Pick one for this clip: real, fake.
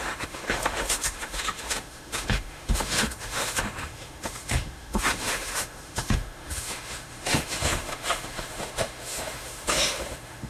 fake